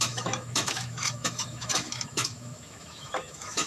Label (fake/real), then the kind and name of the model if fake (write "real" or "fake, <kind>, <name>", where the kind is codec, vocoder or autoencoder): fake, autoencoder, DAC-VAE